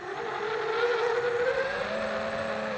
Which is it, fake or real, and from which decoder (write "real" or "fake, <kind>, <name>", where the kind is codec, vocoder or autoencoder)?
real